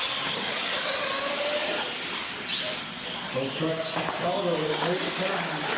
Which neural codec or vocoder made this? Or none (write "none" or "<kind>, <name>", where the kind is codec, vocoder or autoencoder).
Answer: none